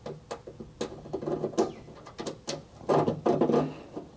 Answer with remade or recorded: recorded